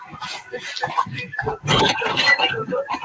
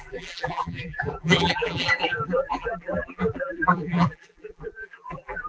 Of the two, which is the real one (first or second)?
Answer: first